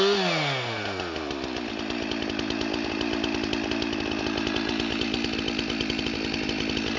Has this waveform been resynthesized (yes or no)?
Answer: no